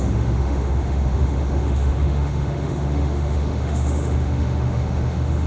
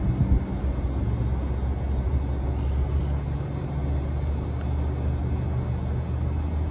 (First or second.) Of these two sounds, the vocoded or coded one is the first